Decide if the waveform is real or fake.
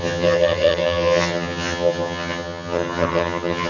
fake